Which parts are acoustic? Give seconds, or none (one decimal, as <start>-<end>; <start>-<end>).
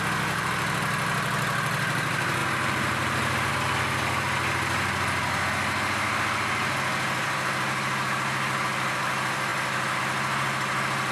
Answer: 0.0-11.1